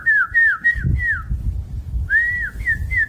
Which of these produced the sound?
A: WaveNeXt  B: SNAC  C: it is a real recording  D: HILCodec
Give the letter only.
C